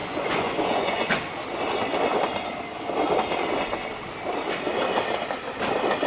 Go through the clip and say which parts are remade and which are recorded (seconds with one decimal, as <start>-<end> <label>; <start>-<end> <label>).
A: 0.0-1.2 remade; 1.2-6.1 recorded